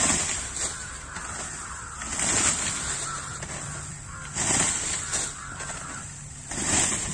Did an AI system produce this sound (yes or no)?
no